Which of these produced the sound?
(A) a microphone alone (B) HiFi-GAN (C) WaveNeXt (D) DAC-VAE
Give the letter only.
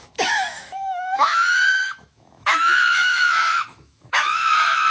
D